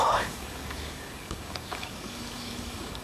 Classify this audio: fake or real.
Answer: fake